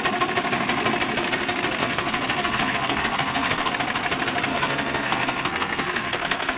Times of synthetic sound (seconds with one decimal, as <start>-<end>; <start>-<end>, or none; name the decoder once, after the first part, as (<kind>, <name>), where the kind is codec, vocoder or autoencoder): 1.8-3.7 (codec, SNAC); 4.5-6.6